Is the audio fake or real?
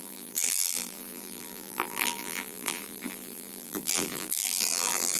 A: fake